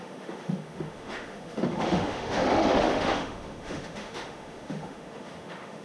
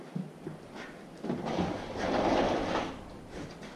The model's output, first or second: first